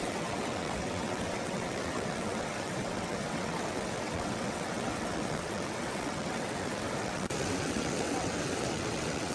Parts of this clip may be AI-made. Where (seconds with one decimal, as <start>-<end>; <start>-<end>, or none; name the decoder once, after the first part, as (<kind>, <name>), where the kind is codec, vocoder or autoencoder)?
0.0-9.3 (vocoder, WaveNeXt)